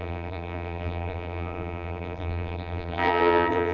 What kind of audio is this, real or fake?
fake